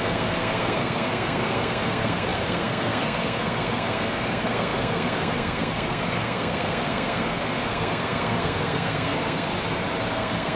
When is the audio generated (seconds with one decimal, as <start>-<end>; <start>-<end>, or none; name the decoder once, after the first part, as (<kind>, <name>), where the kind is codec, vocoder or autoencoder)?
0.0-9.5 (codec, SNAC); 10.1-10.6